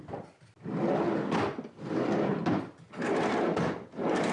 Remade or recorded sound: recorded